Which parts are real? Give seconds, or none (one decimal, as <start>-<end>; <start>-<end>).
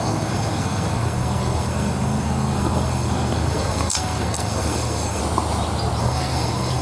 5.2-6.0